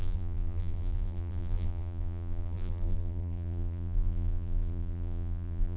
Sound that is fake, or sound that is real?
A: fake